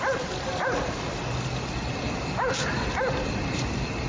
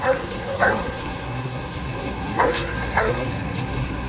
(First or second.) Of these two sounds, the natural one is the first